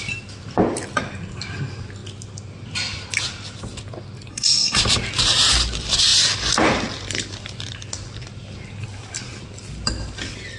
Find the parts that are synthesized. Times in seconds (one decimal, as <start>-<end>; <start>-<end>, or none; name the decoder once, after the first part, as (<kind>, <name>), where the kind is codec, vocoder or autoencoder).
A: 4.3-4.8 (codec, SNAC)